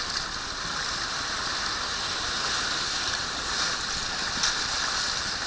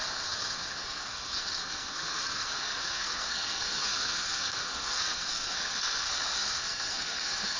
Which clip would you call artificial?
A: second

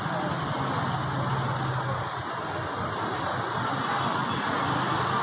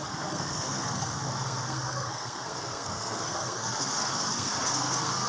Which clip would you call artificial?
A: second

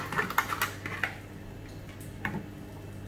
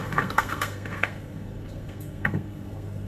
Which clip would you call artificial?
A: second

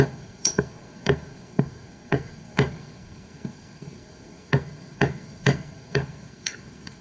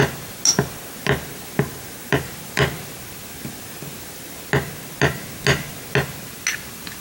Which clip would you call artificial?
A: first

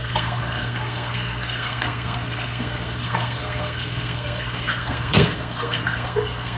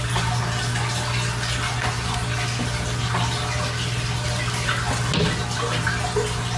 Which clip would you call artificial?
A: first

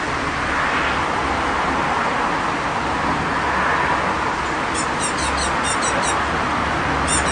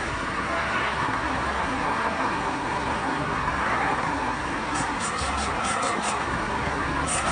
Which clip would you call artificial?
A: second